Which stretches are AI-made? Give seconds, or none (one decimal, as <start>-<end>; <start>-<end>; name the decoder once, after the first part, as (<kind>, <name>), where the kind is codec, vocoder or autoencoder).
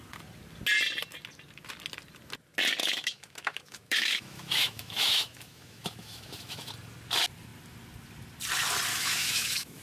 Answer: 2.8-6.7 (autoencoder, DAC-VAE); 8.9-9.8